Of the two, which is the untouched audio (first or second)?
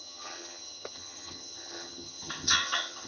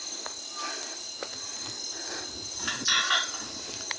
second